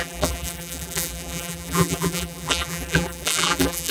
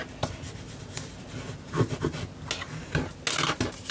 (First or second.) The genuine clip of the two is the second